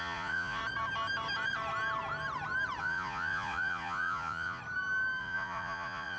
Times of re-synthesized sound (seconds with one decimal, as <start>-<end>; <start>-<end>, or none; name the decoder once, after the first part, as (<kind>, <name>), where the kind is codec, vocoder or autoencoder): 0.0-0.6 (vocoder, Vocos); 2.8-4.6; 5.2-6.2